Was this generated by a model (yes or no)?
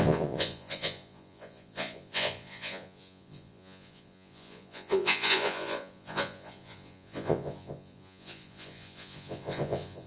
yes